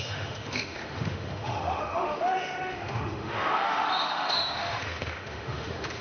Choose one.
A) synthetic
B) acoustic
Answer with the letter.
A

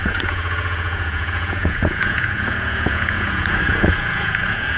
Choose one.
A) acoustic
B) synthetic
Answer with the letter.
B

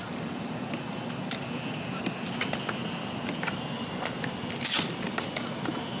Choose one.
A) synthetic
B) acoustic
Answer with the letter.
B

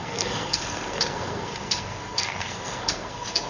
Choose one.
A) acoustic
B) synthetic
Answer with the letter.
B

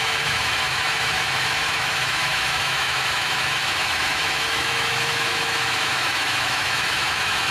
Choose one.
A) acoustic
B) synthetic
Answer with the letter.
B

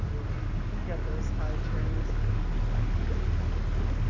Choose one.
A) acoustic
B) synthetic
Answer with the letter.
A